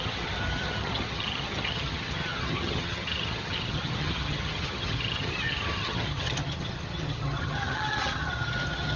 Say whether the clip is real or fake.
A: fake